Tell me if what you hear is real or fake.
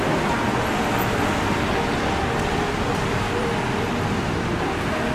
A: real